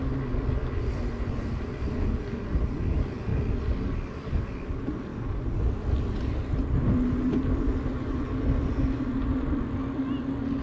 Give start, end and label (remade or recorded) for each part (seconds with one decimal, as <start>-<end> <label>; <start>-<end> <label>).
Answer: 0.0-10.6 recorded